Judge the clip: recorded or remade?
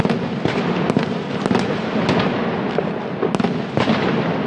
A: recorded